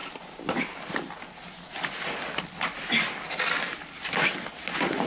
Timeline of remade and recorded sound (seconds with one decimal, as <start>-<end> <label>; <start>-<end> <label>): 0.0-5.1 recorded